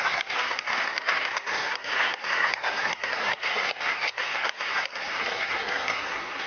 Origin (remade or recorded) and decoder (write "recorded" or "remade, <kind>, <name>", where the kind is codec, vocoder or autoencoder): remade, codec, SNAC